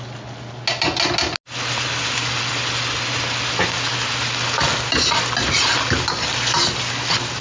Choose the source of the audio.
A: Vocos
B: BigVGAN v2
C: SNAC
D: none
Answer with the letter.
D